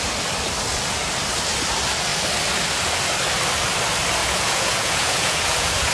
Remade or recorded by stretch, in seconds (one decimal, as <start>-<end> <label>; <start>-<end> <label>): 0.0-4.2 recorded; 4.2-5.9 remade